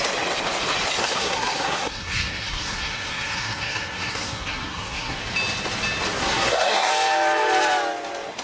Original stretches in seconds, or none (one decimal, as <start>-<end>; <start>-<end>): 0.0-1.0; 5.2-6.2; 6.9-8.4